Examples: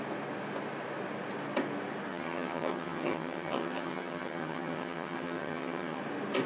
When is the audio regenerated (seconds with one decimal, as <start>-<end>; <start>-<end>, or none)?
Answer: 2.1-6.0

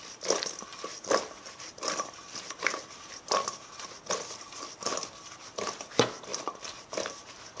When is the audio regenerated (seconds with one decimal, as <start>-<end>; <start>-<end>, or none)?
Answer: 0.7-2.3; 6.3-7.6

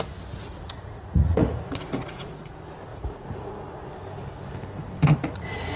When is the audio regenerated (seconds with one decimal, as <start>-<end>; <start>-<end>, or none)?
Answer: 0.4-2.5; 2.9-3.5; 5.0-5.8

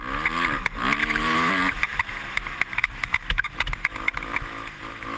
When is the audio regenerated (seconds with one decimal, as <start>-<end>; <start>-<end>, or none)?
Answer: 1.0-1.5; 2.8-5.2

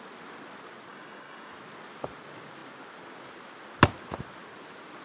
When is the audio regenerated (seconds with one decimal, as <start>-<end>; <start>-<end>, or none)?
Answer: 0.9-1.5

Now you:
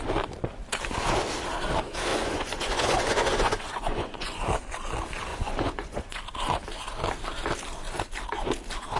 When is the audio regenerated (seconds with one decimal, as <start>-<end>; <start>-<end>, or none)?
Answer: 2.1-4.4; 5.3-6.2

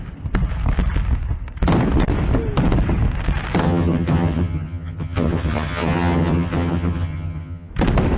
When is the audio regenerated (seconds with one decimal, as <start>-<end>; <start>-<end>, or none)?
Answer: 3.6-7.7